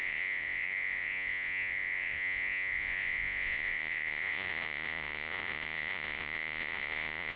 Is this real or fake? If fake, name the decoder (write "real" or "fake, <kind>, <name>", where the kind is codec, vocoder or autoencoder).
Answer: fake, vocoder, Vocos